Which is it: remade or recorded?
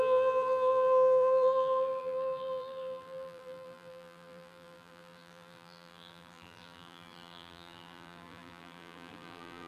remade